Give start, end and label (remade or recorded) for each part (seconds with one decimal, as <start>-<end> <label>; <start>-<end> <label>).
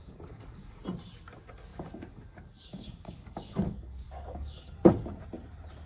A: 0.0-0.8 remade; 0.8-1.7 recorded; 1.7-5.2 remade; 5.2-5.9 recorded